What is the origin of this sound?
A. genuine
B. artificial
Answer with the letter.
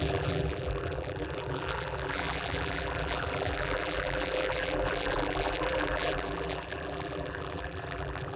B